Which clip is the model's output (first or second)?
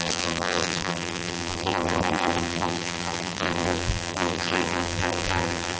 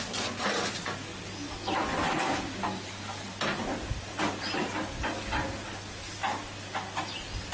first